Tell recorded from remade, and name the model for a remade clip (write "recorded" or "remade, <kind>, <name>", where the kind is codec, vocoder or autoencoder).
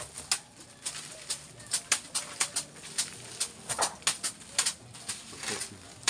recorded